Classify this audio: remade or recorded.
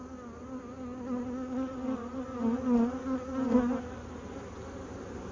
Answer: recorded